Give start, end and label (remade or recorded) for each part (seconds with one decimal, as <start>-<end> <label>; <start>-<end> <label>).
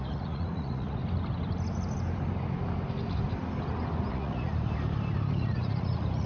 0.0-1.0 remade; 1.0-4.1 recorded; 4.1-4.5 remade; 4.5-5.3 recorded; 5.3-6.3 remade